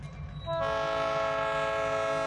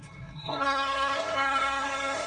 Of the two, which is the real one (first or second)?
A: first